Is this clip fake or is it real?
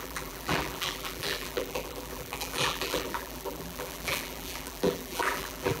fake